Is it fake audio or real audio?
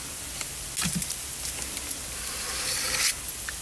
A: real